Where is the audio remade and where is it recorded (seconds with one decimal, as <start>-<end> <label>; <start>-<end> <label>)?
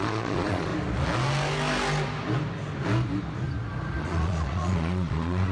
0.0-0.7 remade; 0.7-4.0 recorded; 4.0-5.5 remade